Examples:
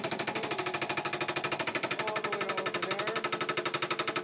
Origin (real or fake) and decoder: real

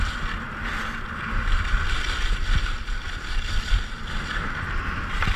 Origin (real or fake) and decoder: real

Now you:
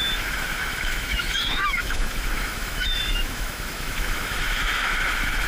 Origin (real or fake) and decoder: fake, autoencoder, DAC-VAE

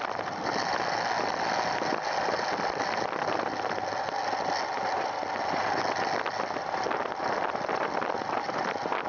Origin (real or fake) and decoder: real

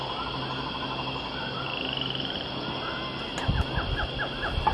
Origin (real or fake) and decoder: real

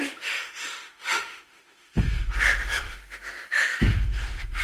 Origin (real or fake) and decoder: fake, autoencoder, DAC-VAE